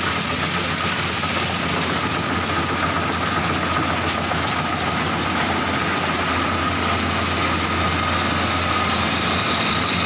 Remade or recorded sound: recorded